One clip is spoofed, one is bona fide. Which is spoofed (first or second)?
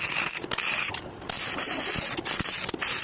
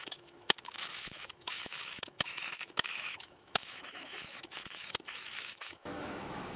second